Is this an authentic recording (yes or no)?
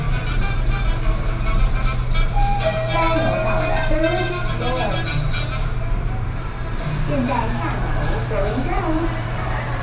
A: no